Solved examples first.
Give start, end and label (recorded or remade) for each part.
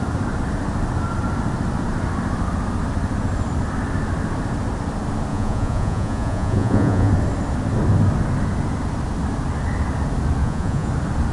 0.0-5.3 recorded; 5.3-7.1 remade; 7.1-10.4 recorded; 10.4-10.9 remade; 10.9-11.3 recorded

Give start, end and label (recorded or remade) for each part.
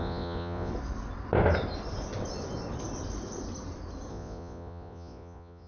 0.0-0.7 remade; 0.7-4.1 recorded; 4.1-5.7 remade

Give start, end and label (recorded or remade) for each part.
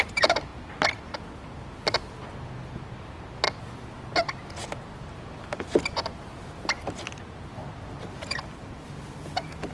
0.0-9.7 recorded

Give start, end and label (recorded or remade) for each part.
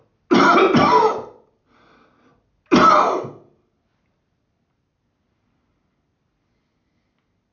0.0-7.5 recorded